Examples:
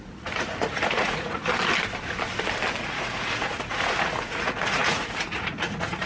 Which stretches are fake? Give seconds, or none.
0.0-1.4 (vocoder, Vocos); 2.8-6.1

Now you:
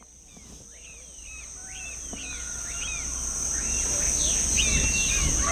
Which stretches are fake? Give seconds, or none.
none

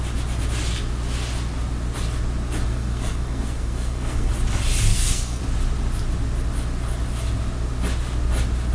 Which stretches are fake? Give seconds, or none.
2.7-4.3 (codec, SNAC); 4.9-5.4

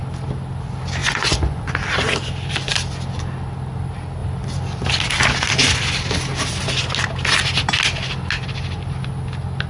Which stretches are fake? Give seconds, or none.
1.0-1.7 (vocoder, Vocos)